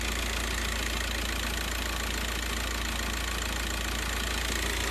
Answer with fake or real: real